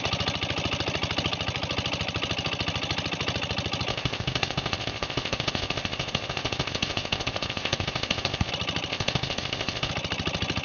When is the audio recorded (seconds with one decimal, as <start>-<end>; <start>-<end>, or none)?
0.0-3.9; 8.5-8.9; 9.9-10.6